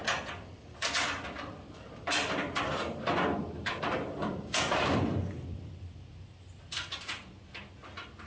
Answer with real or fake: fake